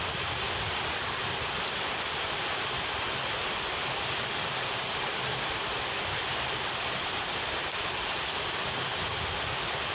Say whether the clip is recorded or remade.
recorded